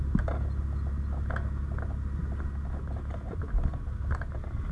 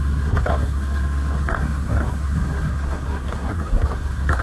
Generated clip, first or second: second